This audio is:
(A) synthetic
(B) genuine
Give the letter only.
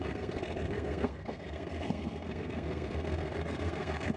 A